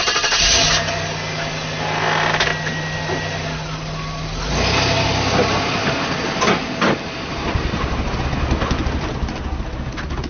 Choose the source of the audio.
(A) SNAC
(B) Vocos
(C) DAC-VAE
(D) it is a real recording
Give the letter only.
D